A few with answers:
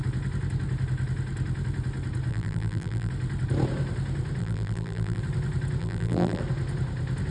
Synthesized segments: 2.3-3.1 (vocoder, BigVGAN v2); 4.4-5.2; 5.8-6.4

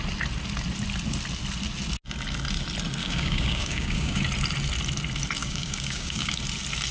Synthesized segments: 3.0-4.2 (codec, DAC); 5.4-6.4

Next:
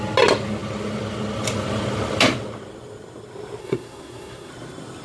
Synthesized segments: 3.6-4.5 (codec, SNAC)